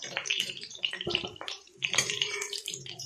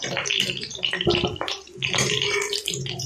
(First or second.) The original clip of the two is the second